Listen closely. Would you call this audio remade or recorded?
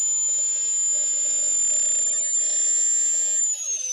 remade